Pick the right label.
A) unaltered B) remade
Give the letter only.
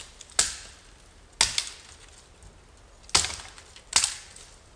A